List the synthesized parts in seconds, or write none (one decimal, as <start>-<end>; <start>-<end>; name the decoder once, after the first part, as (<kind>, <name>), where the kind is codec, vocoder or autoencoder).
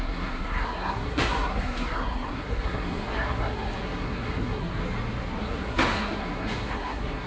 0.0-4.8 (codec, SNAC); 5.4-7.3